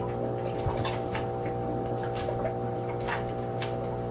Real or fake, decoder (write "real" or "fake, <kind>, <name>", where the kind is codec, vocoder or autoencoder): real